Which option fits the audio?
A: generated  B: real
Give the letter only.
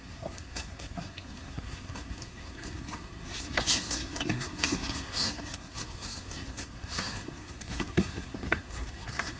A